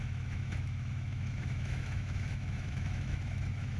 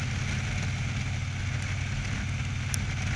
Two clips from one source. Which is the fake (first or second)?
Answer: first